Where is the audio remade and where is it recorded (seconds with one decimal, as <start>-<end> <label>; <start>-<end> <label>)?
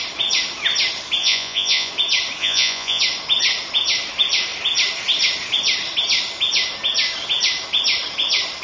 0.0-1.2 recorded; 1.2-1.9 remade; 1.9-2.4 recorded; 2.4-3.0 remade; 3.0-8.6 recorded